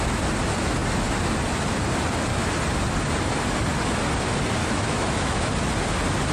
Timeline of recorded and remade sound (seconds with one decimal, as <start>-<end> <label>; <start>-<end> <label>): 0.0-4.6 recorded; 4.6-5.5 remade; 5.5-6.3 recorded